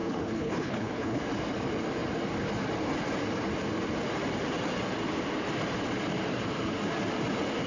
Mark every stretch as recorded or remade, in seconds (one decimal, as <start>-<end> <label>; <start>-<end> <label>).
0.0-1.2 remade; 1.2-7.7 recorded